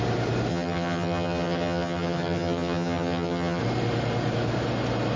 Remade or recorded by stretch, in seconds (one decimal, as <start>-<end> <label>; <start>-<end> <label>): 0.0-0.5 recorded; 0.5-3.6 remade; 3.6-5.2 recorded